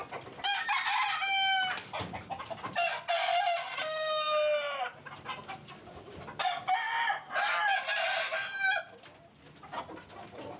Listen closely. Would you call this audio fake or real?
real